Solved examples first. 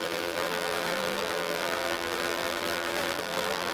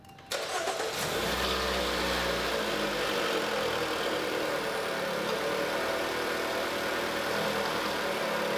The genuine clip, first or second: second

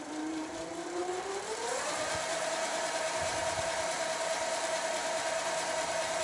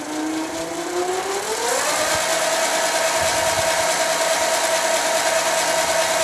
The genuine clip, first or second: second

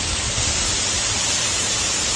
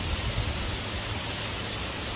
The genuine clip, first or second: second